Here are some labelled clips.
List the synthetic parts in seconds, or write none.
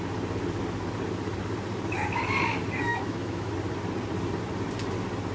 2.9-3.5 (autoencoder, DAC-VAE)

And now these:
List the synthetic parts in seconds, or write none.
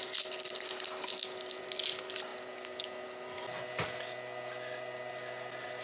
none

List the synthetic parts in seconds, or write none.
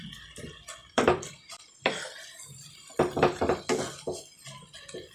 0.8-3.6 (vocoder, BigVGAN v2)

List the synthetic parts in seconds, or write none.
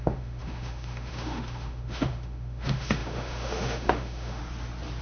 0.0-4.4 (autoencoder, DAC-VAE)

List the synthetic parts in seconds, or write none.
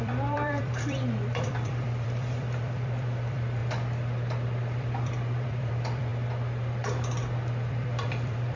0.0-3.6 (vocoder, BigVGAN v2); 4.8-6.1; 7.7-8.6